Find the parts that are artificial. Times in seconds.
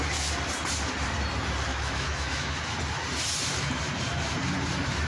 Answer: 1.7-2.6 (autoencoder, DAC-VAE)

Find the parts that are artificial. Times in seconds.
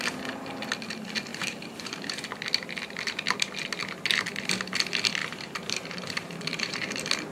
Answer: 1.3-2.2 (vocoder, BigVGAN v2); 5.2-6.8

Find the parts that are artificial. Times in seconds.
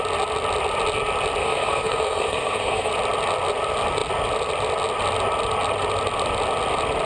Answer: 1.4-2.9 (codec, SNAC)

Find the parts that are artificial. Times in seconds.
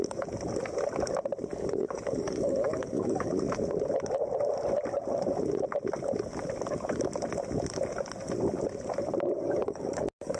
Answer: 1.5-3.3 (codec, DAC); 9.4-10.4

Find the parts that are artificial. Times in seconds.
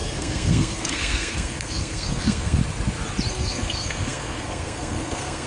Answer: 0.0-2.6 (codec, SNAC); 3.3-5.5